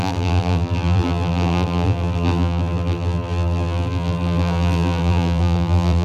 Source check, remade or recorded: remade